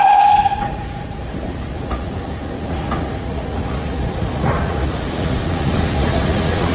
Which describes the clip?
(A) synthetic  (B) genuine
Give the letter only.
A